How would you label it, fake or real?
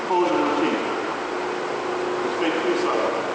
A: real